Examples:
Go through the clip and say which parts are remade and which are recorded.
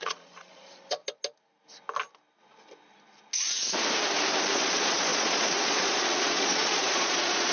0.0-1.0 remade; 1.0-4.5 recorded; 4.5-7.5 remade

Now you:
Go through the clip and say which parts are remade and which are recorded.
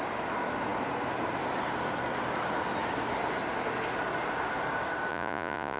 0.0-5.1 recorded; 5.1-5.8 remade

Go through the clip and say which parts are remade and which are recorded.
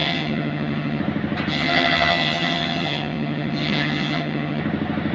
0.0-1.0 remade; 1.0-1.5 recorded; 1.5-4.6 remade; 4.6-5.1 recorded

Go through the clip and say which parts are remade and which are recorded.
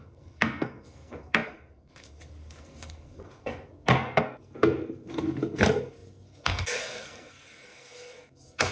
0.0-8.7 remade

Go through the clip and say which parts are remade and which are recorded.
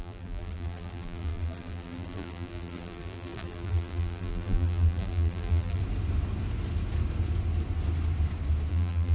0.0-5.8 remade; 5.8-8.7 recorded; 8.7-9.1 remade